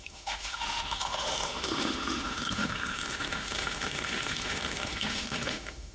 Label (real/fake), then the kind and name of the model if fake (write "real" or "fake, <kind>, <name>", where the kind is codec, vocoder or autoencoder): fake, autoencoder, DAC-VAE